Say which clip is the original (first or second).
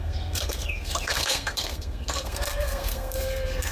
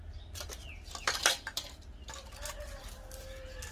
second